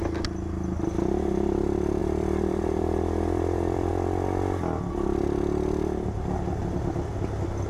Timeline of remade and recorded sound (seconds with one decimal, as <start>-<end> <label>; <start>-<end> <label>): 0.0-2.0 recorded; 2.0-3.9 remade; 3.9-6.6 recorded; 6.6-7.1 remade; 7.1-7.7 recorded